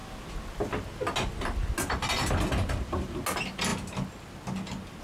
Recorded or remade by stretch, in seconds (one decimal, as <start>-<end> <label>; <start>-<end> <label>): 0.0-5.0 recorded